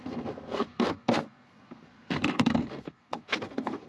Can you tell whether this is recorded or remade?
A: remade